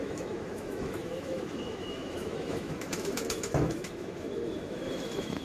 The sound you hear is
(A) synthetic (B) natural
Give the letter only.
A